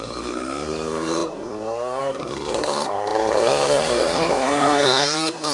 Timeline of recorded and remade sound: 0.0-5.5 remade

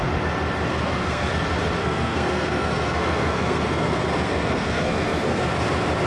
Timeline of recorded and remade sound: 0.0-0.7 recorded; 0.7-1.3 remade; 1.3-1.8 recorded; 1.8-5.5 remade; 5.5-6.1 recorded

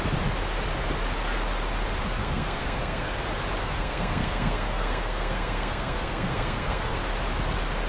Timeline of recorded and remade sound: 0.0-2.2 recorded; 2.2-3.1 remade; 3.1-3.6 recorded; 3.6-7.0 remade; 7.0-7.9 recorded